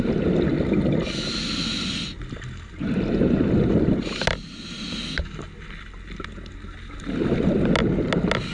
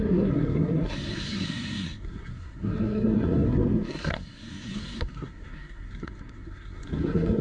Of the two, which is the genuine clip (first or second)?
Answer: first